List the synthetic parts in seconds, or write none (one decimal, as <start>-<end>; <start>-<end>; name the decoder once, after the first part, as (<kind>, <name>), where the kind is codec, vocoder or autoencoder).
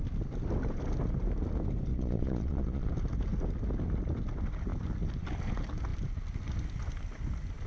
1.9-2.9 (vocoder, Vocos)